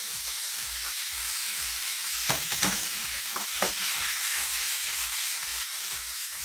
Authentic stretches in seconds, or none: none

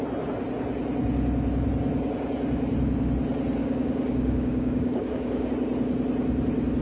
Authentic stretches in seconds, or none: 0.0-3.6; 5.5-6.8

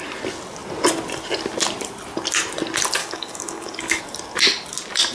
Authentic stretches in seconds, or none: 0.0-3.0; 4.0-5.1

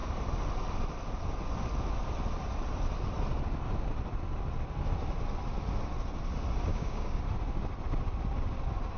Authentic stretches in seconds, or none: 0.0-6.7; 7.2-9.0

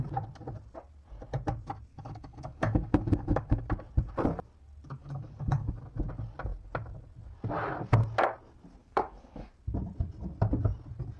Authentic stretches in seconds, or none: 0.0-1.9; 3.6-5.0; 5.8-8.8; 9.5-11.2